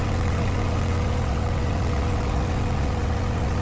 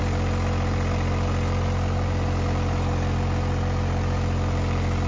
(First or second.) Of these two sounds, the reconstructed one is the first